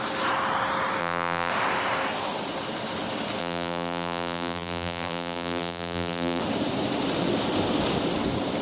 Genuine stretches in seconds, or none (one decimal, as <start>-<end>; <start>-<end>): 0.0-1.0; 1.5-3.4; 6.4-8.6